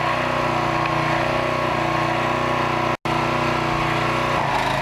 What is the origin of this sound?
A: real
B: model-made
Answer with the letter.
A